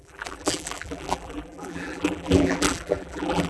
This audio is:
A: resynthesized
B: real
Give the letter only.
A